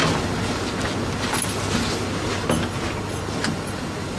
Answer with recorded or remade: recorded